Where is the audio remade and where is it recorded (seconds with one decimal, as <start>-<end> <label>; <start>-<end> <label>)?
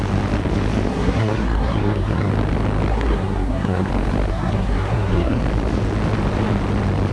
0.0-0.9 recorded; 0.9-2.3 remade; 2.3-2.9 recorded; 2.9-3.9 remade; 3.9-4.3 recorded; 4.3-5.4 remade; 5.4-7.1 recorded